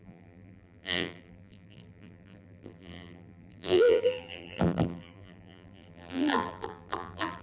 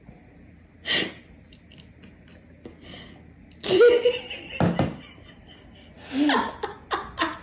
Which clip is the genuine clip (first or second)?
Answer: second